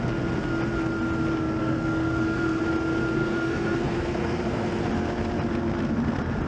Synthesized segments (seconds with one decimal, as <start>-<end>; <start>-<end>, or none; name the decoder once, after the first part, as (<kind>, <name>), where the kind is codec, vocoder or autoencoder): 1.6-2.6 (codec, SNAC); 3.2-4.9